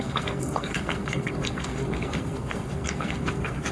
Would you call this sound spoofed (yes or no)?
yes